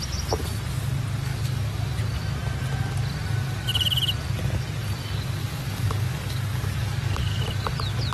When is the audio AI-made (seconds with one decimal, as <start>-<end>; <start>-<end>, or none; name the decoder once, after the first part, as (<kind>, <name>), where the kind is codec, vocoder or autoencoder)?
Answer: 1.3-1.8 (codec, DAC); 5.4-7.4